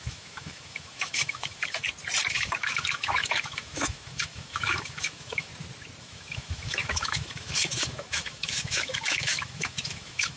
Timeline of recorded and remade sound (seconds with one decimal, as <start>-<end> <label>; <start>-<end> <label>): 0.0-1.8 remade; 1.8-2.3 recorded; 2.3-5.5 remade; 5.5-6.0 recorded; 6.0-10.4 remade